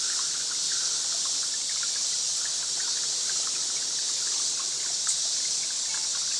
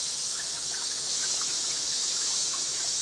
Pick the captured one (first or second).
first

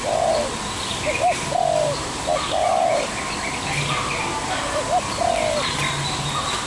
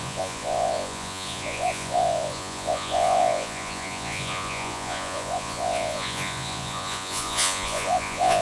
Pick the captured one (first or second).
first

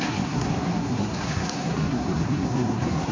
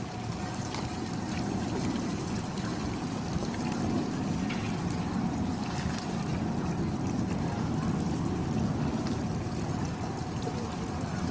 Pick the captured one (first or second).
second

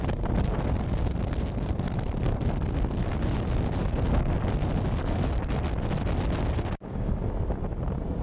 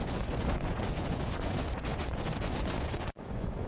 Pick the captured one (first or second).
first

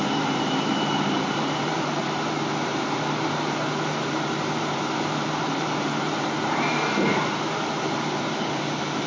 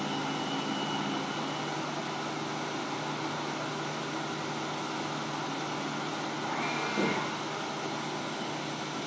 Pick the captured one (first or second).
second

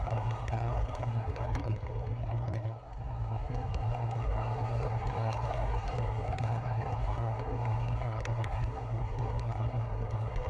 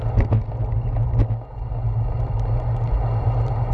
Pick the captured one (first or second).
second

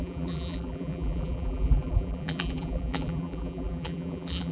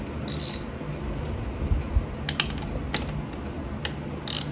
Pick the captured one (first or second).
second